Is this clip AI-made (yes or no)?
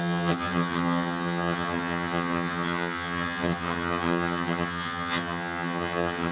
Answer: yes